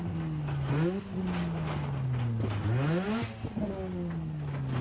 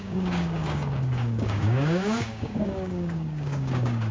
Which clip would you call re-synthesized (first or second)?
second